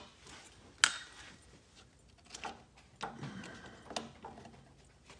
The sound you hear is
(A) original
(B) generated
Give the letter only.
A